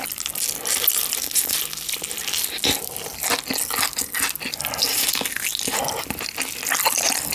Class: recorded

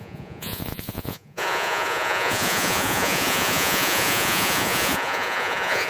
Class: remade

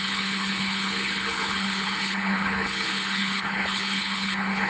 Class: remade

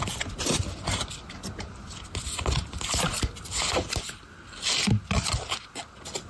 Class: recorded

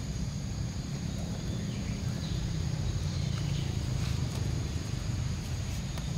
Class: remade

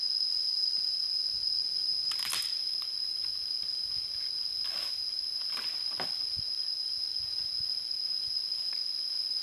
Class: recorded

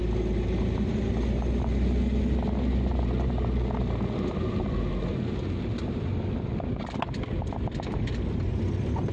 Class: recorded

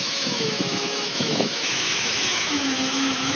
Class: remade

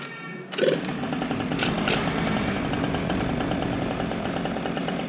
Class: recorded